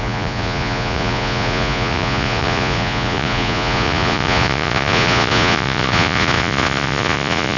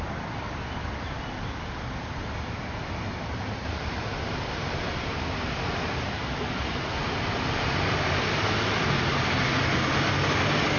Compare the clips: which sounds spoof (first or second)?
first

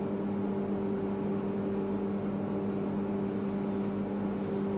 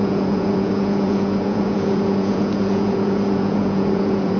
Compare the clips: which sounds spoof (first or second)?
second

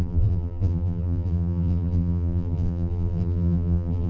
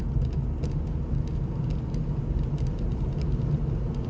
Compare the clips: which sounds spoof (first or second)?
first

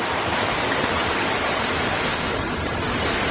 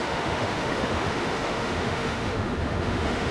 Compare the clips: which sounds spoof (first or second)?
second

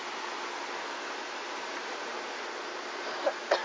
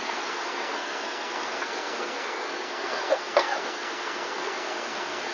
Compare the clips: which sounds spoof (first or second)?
second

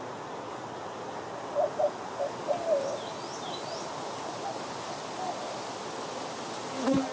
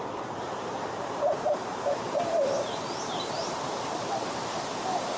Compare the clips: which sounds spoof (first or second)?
second